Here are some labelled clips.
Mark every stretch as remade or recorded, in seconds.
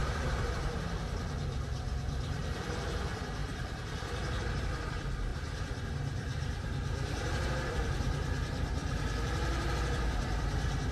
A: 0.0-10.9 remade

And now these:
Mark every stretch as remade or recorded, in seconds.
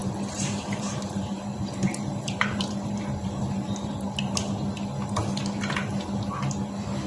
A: 0.0-4.3 remade; 4.3-7.1 recorded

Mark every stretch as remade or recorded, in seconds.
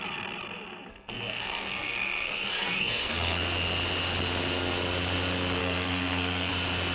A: 0.0-0.9 recorded; 0.9-3.4 remade; 3.4-5.6 recorded; 5.6-6.5 remade; 6.5-6.9 recorded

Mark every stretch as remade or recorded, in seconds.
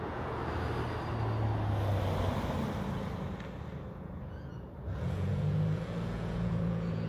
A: 0.0-0.4 remade; 0.4-4.0 recorded; 4.0-7.1 remade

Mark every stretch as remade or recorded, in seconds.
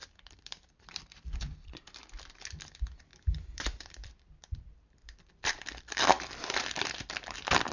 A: 0.0-1.9 remade; 1.9-3.1 recorded; 3.1-7.1 remade; 7.1-7.7 recorded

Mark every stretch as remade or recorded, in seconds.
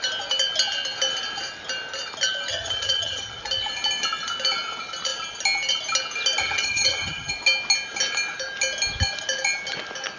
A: 0.0-2.5 recorded; 2.5-3.4 remade; 3.4-6.4 recorded; 6.4-7.3 remade; 7.3-10.2 recorded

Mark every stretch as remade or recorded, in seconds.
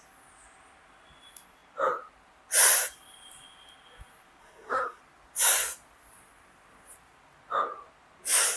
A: 0.0-4.4 recorded; 4.4-5.0 remade; 5.0-8.6 recorded